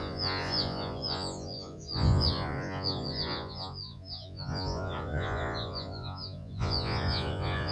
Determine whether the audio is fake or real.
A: fake